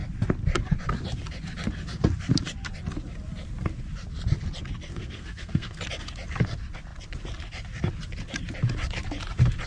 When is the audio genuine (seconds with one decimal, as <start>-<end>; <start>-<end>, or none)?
0.0-4.9; 5.8-9.7

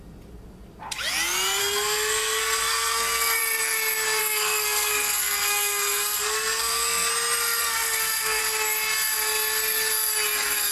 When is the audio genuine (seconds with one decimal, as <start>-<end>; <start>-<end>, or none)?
0.0-1.6; 3.4-4.2; 7.1-7.6; 8.4-10.7

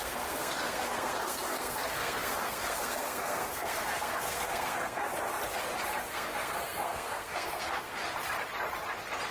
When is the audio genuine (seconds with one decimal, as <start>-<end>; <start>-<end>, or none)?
5.1-6.1; 8.0-9.3

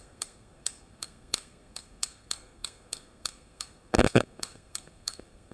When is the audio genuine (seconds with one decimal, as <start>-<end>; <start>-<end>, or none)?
none

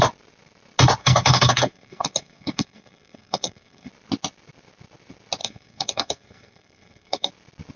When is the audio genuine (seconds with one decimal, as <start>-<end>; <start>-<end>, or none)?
0.0-1.0; 3.9-5.4; 7.3-7.8

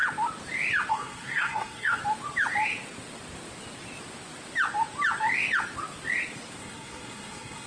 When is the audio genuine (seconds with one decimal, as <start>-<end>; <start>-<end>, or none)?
0.0-0.9; 2.0-6.6

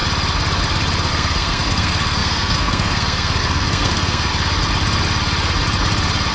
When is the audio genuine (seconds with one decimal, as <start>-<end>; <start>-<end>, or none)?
0.0-1.1; 4.3-6.3